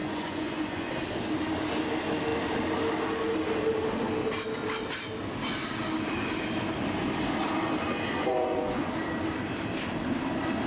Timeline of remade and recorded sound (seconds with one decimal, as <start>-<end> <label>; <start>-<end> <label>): 0.0-0.9 remade; 0.9-8.2 recorded; 8.2-8.9 remade; 8.9-10.7 recorded